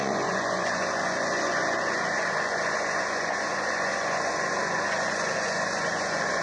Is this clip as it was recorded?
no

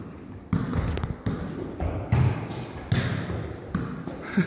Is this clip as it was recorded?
yes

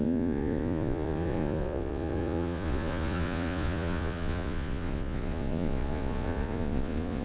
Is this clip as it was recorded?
no